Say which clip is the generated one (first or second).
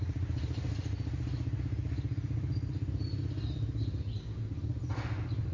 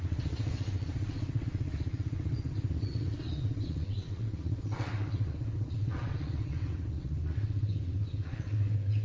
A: second